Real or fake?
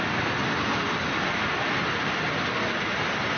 real